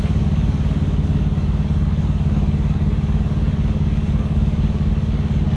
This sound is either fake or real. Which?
fake